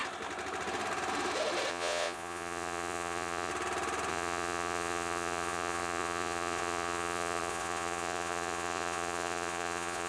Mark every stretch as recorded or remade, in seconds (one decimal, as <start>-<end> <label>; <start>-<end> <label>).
0.0-1.7 recorded; 1.7-3.5 remade; 3.5-4.1 recorded; 4.1-10.1 remade